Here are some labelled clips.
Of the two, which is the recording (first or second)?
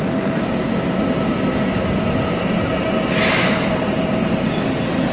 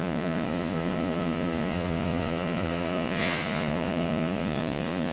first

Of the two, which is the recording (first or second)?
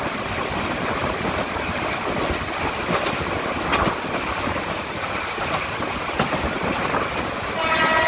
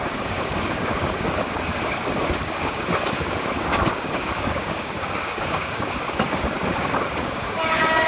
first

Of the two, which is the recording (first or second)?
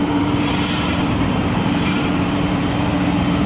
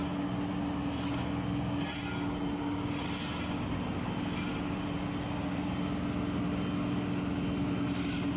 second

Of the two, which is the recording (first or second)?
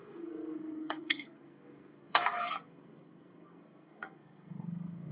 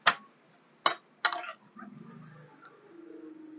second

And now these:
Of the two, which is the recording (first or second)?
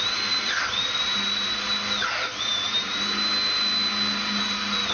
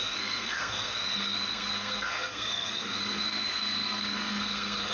first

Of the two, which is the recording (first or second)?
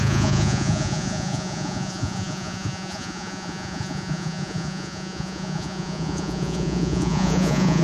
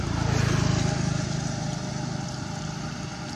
second